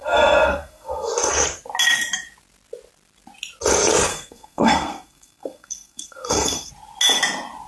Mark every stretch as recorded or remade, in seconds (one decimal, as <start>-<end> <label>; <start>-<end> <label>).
0.0-1.1 remade; 1.1-4.1 recorded; 4.1-6.7 remade; 6.7-7.7 recorded